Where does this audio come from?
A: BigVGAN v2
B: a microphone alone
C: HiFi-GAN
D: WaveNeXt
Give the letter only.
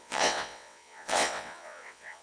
D